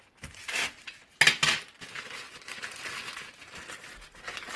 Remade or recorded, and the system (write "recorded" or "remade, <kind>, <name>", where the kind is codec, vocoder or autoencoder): recorded